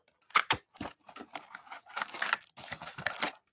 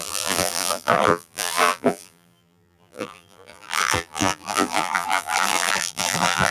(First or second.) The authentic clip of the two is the first